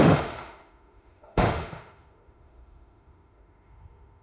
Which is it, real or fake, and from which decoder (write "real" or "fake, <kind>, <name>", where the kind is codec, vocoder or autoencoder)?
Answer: fake, autoencoder, DAC-VAE